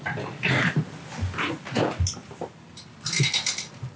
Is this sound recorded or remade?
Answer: recorded